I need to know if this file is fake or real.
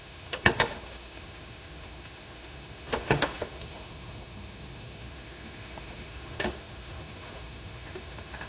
fake